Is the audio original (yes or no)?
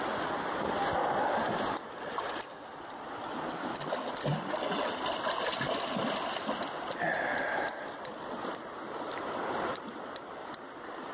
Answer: yes